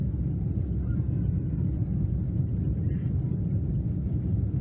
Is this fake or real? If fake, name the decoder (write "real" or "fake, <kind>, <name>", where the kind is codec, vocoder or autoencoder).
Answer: real